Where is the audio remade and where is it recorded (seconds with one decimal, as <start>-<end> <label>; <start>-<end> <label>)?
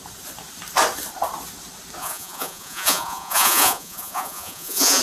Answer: 0.0-2.0 recorded; 2.0-5.0 remade